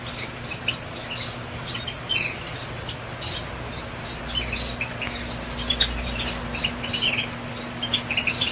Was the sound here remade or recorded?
remade